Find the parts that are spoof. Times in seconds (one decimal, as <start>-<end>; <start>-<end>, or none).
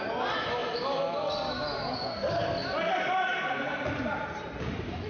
none